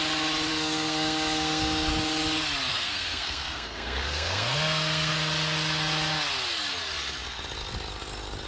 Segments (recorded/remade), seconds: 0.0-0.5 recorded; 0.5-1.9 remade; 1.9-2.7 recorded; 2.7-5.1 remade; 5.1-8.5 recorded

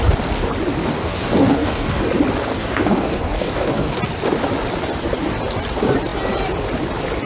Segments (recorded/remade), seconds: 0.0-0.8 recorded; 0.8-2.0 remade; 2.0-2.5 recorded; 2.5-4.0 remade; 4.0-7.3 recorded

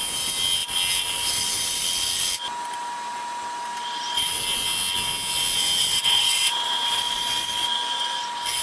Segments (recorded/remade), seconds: 0.0-5.8 recorded; 5.8-7.0 remade; 7.0-8.6 recorded

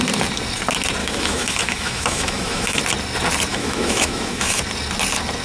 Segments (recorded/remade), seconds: 0.0-1.0 recorded; 1.0-2.8 remade; 2.8-3.5 recorded; 3.5-4.6 remade; 4.6-5.4 recorded